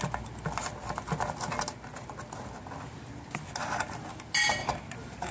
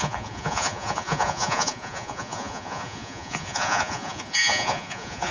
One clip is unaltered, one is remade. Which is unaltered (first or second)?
first